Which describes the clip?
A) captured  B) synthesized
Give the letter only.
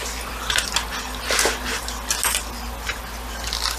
A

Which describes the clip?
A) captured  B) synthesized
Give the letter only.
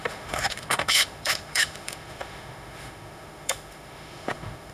B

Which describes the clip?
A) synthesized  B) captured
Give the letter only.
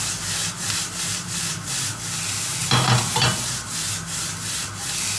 B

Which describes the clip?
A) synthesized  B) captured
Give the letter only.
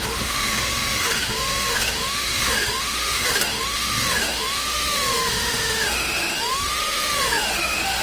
A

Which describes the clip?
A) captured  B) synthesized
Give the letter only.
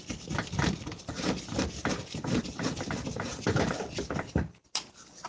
A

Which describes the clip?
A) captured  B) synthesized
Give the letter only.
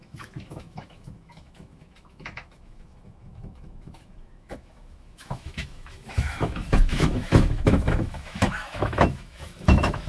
B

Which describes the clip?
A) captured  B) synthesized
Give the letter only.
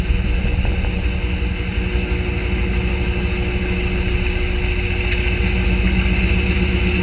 A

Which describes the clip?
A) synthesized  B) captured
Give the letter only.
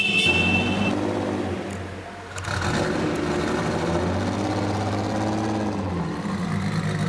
B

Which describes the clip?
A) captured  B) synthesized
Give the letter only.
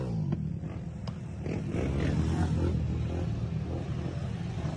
A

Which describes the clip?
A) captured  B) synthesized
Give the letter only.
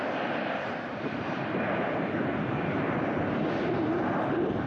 A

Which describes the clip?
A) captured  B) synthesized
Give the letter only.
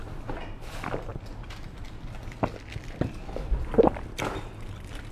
A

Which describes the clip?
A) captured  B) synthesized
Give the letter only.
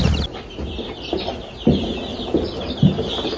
A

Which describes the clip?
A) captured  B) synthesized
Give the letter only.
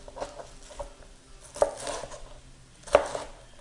A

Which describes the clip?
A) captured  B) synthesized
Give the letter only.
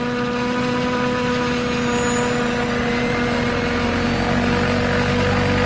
A